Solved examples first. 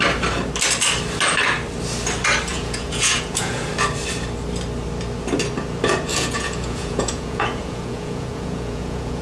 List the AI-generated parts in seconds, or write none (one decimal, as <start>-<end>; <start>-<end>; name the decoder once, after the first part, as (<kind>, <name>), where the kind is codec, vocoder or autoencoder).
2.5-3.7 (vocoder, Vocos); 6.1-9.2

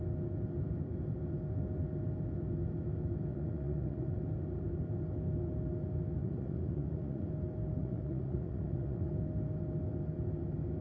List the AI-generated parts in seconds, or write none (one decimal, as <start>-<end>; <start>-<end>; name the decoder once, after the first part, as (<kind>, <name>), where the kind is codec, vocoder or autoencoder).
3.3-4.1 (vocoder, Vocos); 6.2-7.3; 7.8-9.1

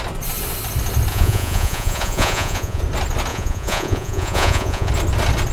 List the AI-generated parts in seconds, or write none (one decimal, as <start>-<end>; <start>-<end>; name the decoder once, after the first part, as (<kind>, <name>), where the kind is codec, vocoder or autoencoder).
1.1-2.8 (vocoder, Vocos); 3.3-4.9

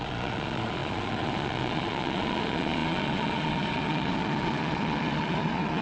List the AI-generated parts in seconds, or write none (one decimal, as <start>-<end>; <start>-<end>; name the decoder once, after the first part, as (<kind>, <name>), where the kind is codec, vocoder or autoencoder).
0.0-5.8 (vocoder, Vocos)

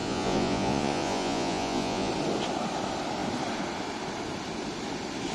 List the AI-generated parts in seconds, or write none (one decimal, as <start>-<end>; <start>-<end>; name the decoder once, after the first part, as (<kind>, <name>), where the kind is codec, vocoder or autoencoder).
0.0-2.1 (vocoder, Vocos)

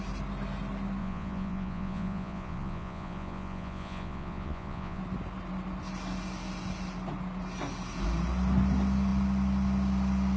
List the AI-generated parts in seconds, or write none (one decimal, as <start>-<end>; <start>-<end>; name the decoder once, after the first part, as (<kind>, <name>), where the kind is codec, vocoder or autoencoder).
1.0-5.0 (vocoder, Vocos)